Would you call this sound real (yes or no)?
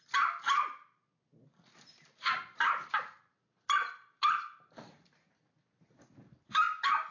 yes